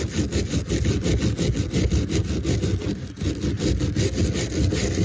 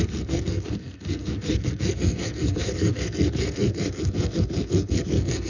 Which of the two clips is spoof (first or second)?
second